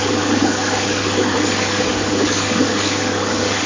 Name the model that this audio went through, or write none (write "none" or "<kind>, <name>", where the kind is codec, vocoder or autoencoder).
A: codec, DAC